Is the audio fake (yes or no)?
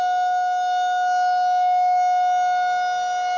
no